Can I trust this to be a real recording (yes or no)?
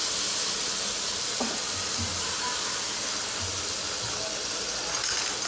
yes